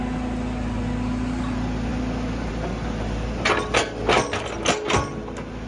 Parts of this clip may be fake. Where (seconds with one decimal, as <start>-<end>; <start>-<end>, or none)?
none